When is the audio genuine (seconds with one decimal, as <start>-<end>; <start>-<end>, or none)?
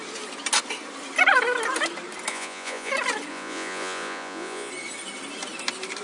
0.0-2.3; 2.9-3.3; 4.7-6.0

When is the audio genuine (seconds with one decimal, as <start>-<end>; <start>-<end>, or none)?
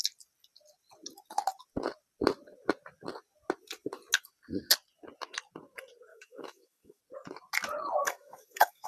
0.0-6.1; 7.0-8.0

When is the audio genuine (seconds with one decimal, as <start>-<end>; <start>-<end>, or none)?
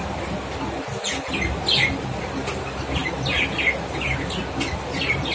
0.0-5.3